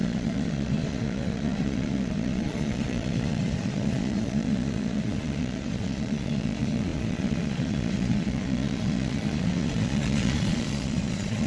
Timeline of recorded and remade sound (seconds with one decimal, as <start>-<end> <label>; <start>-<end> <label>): 0.0-11.5 remade